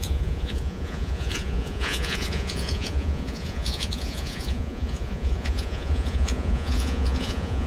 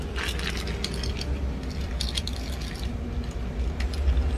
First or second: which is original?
second